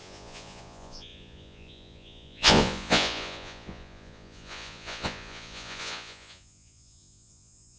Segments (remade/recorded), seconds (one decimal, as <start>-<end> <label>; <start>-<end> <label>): 0.0-7.8 remade